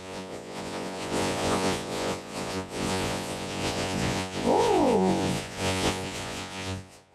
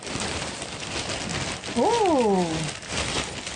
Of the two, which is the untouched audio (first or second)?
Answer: second